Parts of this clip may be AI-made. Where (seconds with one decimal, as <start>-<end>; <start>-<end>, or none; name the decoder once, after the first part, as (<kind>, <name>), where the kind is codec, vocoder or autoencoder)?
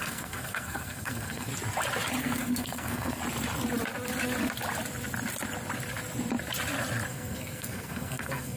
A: 0.0-1.5 (codec, SNAC); 2.2-3.2; 7.1-8.6